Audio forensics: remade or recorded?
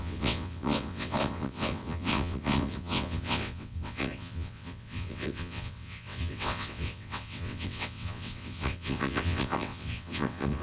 remade